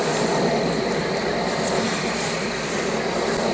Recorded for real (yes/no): yes